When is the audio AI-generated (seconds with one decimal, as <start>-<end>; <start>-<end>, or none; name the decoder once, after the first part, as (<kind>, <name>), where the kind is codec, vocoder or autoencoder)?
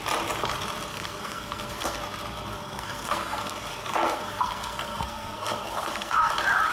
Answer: 0.9-2.0 (codec, SNAC); 2.5-6.3